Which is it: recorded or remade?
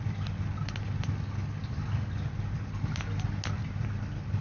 recorded